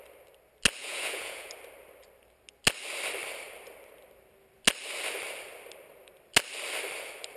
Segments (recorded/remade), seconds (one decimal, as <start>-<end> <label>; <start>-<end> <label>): 0.0-0.8 recorded; 0.8-1.5 remade; 1.5-7.4 recorded